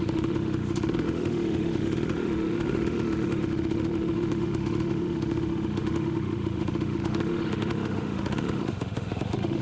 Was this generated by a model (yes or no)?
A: yes